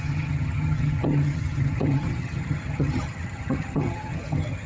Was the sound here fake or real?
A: fake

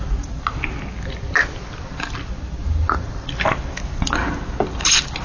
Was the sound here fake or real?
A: real